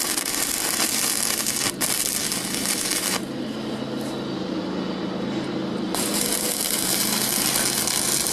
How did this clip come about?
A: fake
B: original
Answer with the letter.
B